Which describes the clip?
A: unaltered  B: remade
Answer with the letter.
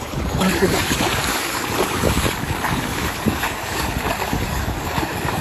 B